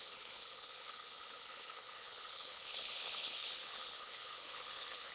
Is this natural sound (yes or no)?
no